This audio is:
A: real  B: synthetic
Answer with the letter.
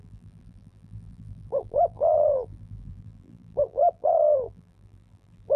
B